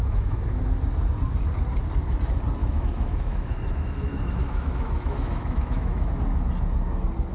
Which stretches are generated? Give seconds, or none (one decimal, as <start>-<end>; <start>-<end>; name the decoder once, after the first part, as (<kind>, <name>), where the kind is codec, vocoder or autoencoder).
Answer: 0.0-0.6 (autoencoder, DAC-VAE); 2.6-6.1